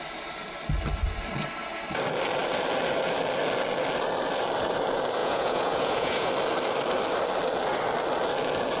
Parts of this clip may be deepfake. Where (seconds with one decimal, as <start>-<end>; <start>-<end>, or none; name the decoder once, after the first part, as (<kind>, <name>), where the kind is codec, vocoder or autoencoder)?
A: 5.2-6.3 (vocoder, Vocos)